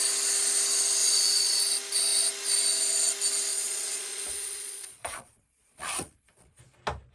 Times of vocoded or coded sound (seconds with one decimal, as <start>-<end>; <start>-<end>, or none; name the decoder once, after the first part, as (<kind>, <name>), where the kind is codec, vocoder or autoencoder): 1.0-1.6 (vocoder, Vocos); 3.5-6.6